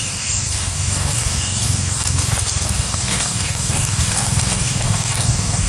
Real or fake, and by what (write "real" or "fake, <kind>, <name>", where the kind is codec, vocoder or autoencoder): fake, codec, DAC